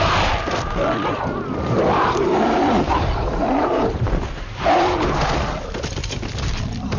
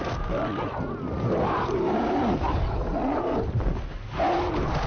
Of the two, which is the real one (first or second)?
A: second